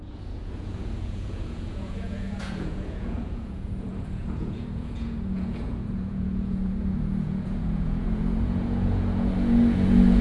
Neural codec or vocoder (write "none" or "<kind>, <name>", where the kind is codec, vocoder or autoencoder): vocoder, Vocos